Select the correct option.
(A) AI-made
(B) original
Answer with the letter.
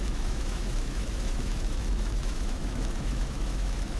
A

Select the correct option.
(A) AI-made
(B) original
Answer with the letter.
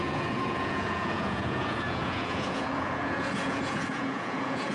A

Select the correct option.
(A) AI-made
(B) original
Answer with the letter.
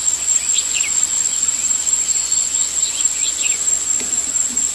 A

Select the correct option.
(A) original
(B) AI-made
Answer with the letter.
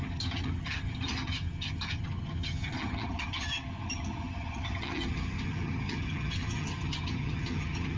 B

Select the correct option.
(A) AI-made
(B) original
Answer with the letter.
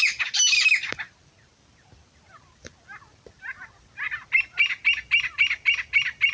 B